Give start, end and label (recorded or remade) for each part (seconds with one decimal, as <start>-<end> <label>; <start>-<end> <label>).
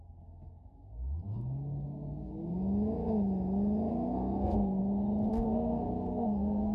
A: 0.0-2.3 remade; 2.3-3.9 recorded; 3.9-4.8 remade; 4.8-5.3 recorded; 5.3-6.7 remade